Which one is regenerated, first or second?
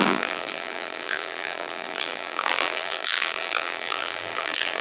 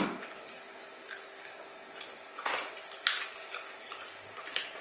first